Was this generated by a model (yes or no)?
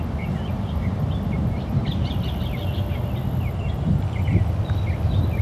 no